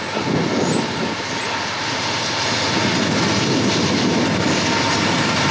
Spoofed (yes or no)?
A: no